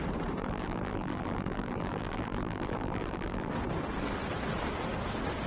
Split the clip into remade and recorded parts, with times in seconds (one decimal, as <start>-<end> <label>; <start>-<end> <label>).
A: 0.0-0.4 recorded; 0.4-3.5 remade; 3.5-5.5 recorded